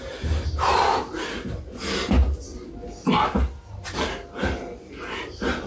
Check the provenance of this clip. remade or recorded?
recorded